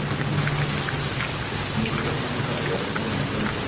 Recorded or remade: recorded